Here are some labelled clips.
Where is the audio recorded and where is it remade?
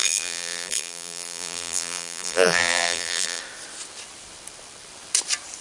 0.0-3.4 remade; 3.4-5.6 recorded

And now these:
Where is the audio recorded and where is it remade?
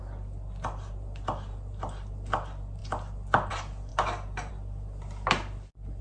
0.0-6.0 recorded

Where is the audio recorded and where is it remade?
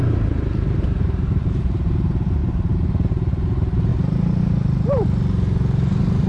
0.0-2.4 remade; 2.4-3.1 recorded; 3.1-3.9 remade; 3.9-6.3 recorded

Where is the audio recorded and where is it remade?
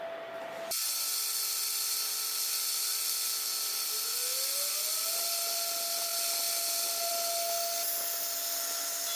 0.0-9.2 recorded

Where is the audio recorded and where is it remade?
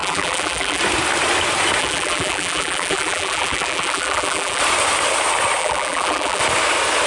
0.0-0.8 remade; 0.8-1.8 recorded; 1.8-4.6 remade; 4.6-5.6 recorded; 5.6-6.4 remade; 6.4-7.1 recorded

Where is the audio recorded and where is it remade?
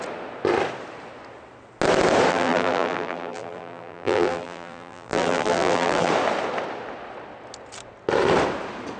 0.0-2.3 recorded; 2.3-6.1 remade; 6.1-9.0 recorded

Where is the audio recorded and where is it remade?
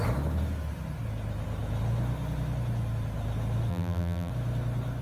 0.0-3.7 recorded; 3.7-4.3 remade; 4.3-5.0 recorded